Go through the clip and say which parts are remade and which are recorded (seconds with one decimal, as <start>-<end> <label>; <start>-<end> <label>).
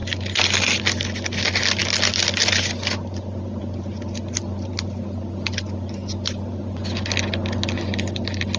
0.0-8.6 recorded